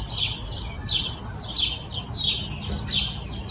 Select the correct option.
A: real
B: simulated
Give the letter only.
A